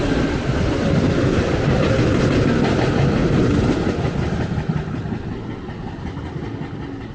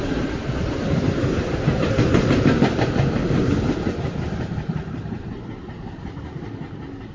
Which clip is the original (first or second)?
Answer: first